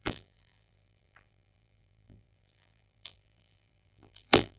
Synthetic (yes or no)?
yes